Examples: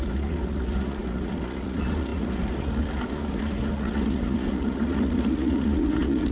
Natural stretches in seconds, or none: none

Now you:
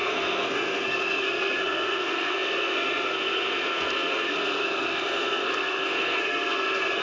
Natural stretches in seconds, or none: none

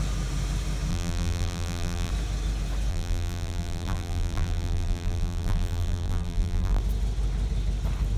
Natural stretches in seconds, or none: 0.0-0.9; 2.1-2.9; 6.8-8.2

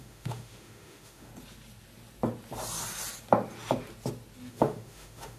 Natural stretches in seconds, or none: 1.3-4.5

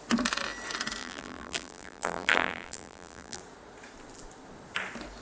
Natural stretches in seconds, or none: 0.0-1.0; 3.4-5.2

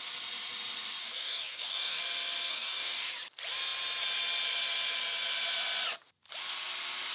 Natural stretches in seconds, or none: 0.0-1.0; 2.0-2.5; 3.1-7.1

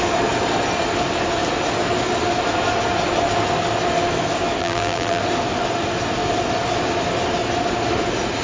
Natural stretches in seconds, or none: 0.0-4.6; 5.2-8.4